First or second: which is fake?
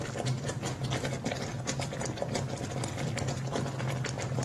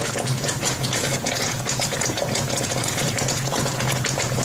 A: second